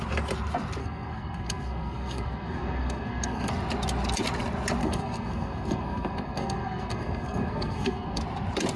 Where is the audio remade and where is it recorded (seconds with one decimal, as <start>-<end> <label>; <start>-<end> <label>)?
0.0-0.8 recorded; 0.8-3.5 remade; 3.5-4.8 recorded; 4.8-8.2 remade; 8.2-8.8 recorded

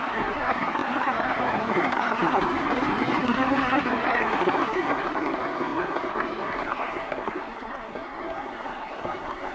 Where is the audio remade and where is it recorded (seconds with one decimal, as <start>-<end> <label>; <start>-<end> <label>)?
0.0-9.5 remade

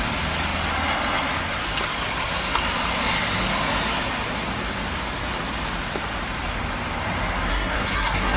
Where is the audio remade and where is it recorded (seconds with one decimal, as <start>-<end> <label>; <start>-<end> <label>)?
0.0-7.5 recorded; 7.5-8.4 remade

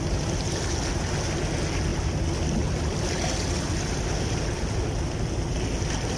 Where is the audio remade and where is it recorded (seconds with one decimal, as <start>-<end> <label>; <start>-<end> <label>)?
0.0-6.2 recorded

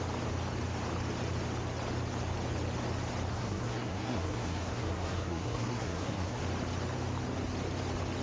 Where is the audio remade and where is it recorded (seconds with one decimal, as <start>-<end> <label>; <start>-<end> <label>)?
0.0-3.3 recorded; 3.3-6.4 remade; 6.4-8.2 recorded

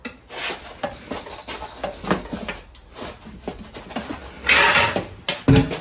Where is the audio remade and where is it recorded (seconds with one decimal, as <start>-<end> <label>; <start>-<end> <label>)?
0.0-5.8 recorded